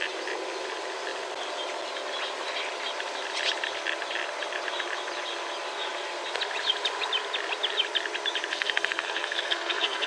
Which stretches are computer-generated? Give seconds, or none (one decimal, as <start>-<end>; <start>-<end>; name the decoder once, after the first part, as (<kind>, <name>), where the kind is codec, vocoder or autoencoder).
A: 8.5-10.1 (codec, SNAC)

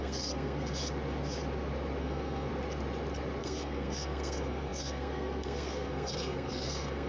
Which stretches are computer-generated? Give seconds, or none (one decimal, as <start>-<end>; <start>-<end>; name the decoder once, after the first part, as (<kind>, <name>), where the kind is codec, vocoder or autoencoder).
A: 0.0-0.8 (codec, SNAC); 2.0-2.5; 3.4-7.1

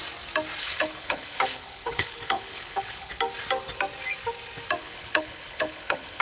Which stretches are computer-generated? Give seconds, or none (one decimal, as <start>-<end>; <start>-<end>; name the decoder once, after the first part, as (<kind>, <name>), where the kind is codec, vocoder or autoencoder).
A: 0.6-3.1 (codec, HILCodec); 4.8-6.2

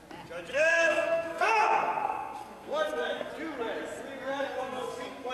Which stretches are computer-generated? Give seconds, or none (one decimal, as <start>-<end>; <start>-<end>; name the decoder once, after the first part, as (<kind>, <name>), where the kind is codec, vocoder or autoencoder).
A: 0.5-3.3 (codec, SNAC); 4.3-5.3

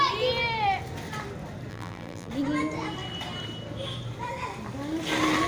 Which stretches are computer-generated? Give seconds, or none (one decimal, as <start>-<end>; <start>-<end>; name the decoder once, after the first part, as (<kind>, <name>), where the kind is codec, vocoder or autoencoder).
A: 1.7-2.3 (vocoder, BigVGAN v2)

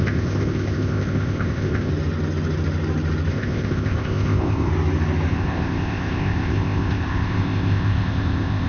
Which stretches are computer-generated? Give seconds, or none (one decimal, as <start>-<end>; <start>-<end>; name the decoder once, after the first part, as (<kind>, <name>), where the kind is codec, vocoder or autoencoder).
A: 0.0-1.9 (codec, ZipCodec); 3.3-4.7; 5.3-8.7

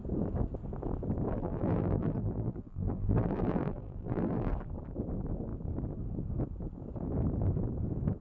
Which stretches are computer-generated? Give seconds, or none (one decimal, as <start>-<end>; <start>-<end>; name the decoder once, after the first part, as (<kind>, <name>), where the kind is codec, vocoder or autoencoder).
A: 1.3-4.5 (vocoder, BigVGAN v2)

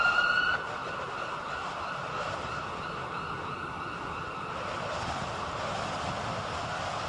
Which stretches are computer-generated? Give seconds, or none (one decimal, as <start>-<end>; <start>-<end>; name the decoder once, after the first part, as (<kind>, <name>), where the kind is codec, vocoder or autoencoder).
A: none